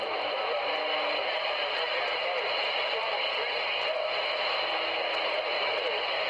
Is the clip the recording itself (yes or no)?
yes